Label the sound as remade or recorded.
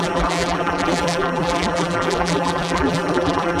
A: remade